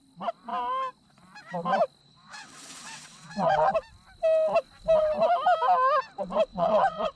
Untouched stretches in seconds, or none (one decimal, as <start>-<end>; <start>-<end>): 0.0-2.0; 3.7-6.5